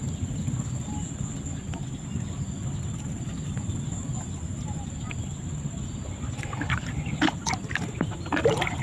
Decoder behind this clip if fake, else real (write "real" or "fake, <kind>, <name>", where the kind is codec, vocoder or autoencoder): real